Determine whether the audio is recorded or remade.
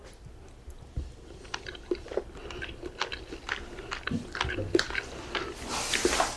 recorded